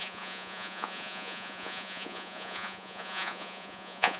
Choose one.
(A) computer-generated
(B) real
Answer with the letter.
A